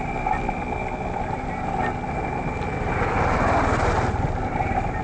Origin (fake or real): real